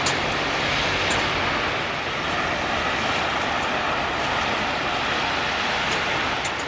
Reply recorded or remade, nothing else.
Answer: recorded